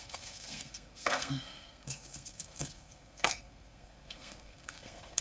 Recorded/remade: remade